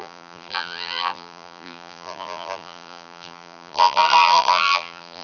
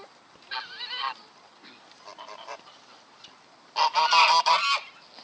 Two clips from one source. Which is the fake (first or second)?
first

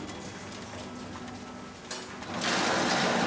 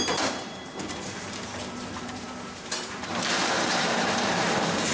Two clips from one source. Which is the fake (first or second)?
second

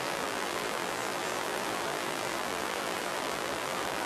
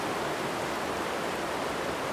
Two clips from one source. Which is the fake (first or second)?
first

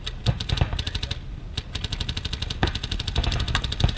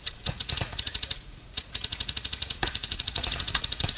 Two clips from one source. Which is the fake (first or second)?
second